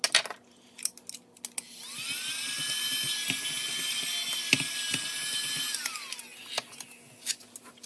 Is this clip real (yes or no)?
yes